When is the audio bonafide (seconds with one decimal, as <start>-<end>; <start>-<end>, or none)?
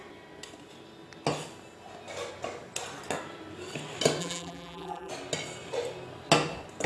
0.0-4.2; 5.1-6.9